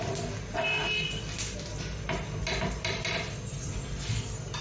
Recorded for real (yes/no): yes